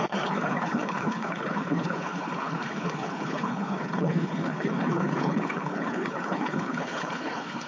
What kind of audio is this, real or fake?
fake